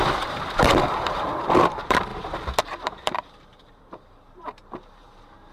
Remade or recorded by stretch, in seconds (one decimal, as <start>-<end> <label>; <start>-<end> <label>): 0.0-2.1 remade; 2.1-2.6 recorded; 2.6-5.5 remade